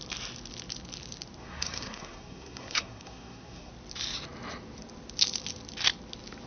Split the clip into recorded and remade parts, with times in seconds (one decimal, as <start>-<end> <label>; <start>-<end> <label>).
0.0-1.4 recorded; 1.4-3.7 remade; 3.7-6.5 recorded